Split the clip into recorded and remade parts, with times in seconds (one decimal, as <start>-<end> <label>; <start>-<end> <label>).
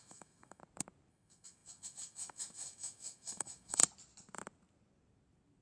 0.0-0.6 remade; 0.6-1.1 recorded; 1.1-3.8 remade; 3.8-5.6 recorded